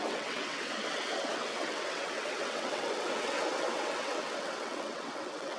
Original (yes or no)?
no